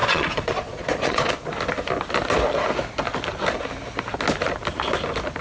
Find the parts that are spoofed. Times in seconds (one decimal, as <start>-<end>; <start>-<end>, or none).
0.0-1.3